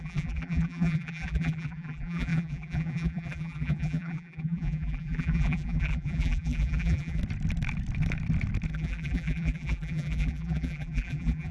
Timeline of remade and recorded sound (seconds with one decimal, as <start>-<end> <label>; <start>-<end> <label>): 0.0-7.2 remade; 7.2-8.7 recorded; 8.7-11.5 remade